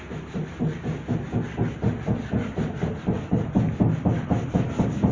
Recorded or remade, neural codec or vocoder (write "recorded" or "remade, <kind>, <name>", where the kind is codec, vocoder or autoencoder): recorded